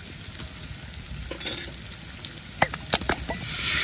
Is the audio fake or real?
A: real